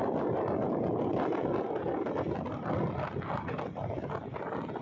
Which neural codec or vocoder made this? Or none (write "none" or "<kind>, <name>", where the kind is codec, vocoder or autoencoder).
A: none